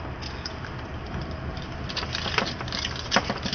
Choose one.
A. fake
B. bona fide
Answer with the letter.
A